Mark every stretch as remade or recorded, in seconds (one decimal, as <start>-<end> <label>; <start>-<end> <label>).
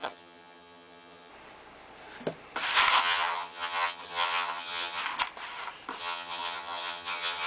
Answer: 0.0-1.3 remade; 1.3-3.0 recorded; 3.0-5.0 remade; 5.0-6.0 recorded; 6.0-7.5 remade